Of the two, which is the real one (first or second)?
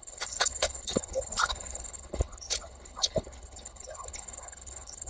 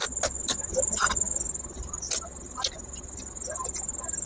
second